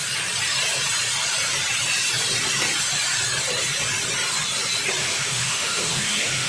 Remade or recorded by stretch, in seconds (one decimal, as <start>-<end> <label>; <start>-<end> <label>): 0.0-5.0 recorded; 5.0-6.5 remade